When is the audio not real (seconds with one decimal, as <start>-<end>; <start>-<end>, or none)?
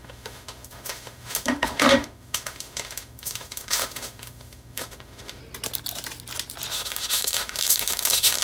0.0-5.4; 6.7-8.4